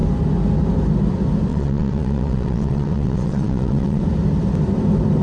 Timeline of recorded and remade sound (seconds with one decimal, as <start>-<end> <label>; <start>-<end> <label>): 0.0-1.5 recorded; 1.5-4.0 remade; 4.0-5.2 recorded